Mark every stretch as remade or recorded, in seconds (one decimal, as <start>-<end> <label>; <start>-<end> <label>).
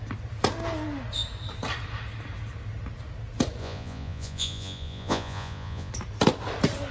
0.0-3.6 recorded; 3.6-5.9 remade; 5.9-6.9 recorded